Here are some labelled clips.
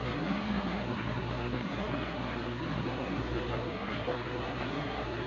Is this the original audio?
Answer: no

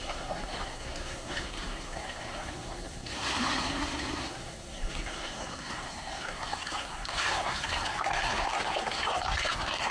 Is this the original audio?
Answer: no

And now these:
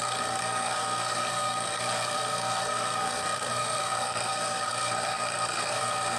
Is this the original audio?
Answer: no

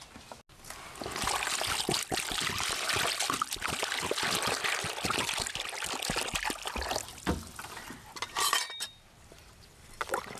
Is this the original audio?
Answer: yes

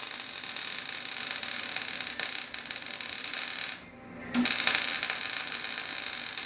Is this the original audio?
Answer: yes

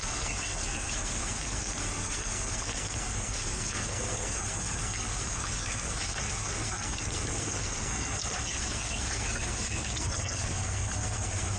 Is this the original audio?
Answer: no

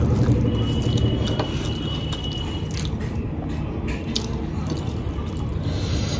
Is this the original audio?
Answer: yes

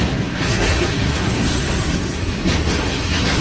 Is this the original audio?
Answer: no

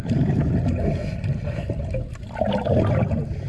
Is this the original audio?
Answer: yes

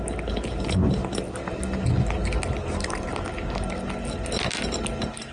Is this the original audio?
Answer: yes